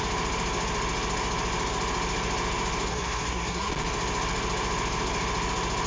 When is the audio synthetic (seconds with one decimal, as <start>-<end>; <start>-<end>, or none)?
2.9-3.7